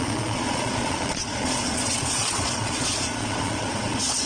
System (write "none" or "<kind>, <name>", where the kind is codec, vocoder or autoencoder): vocoder, Vocos